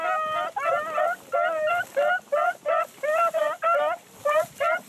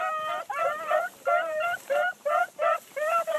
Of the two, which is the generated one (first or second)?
second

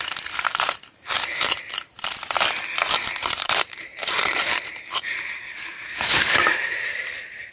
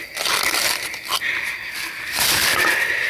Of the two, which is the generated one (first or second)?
first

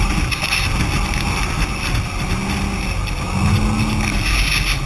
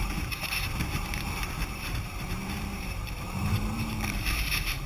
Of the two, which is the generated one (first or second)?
second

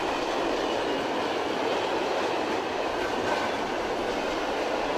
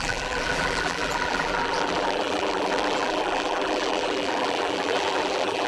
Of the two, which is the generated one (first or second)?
second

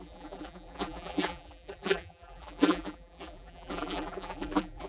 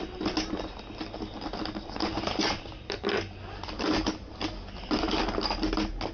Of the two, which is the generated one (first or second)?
first